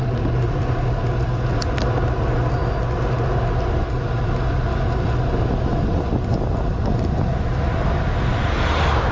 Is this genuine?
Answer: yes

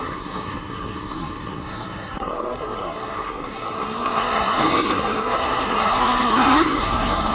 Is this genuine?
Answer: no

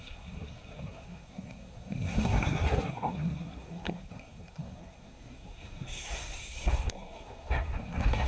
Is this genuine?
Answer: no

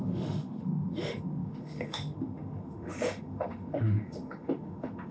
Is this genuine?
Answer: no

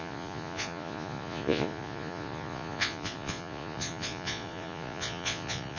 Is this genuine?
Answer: no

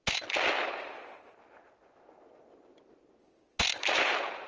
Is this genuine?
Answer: yes